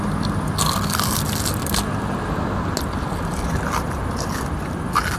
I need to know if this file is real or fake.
real